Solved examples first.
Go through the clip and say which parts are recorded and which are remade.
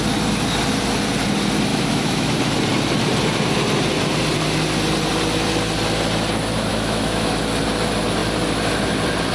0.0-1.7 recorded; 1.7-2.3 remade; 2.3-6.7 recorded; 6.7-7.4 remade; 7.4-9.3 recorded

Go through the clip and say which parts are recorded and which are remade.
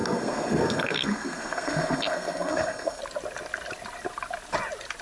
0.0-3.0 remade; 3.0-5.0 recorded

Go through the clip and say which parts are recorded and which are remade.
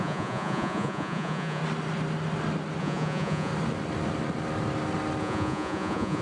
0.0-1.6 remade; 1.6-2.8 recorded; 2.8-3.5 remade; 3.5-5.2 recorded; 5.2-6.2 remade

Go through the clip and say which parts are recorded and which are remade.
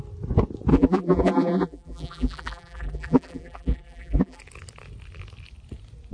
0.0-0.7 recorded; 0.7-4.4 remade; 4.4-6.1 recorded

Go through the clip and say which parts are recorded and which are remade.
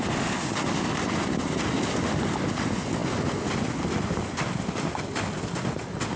0.0-6.2 recorded